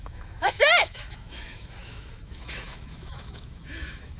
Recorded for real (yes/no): no